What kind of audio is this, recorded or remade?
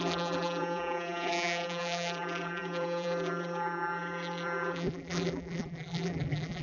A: remade